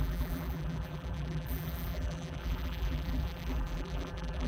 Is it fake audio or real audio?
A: fake